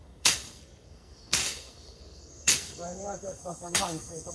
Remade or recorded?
remade